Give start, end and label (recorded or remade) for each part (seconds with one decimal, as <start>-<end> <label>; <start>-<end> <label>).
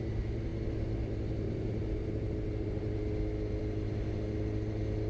0.0-5.1 recorded